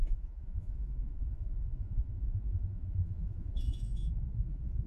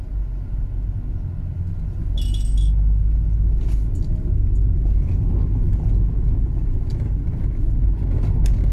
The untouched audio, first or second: second